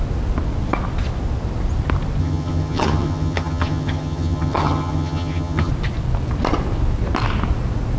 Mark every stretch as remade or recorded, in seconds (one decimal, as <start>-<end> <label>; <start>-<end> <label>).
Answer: 0.0-2.2 recorded; 2.2-5.7 remade; 5.7-8.0 recorded